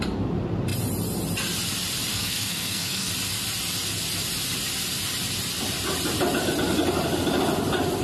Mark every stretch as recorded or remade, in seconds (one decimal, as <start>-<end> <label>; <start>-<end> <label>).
0.0-2.1 recorded; 2.1-3.1 remade; 3.1-8.0 recorded